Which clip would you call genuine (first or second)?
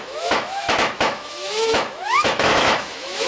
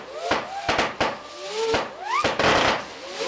second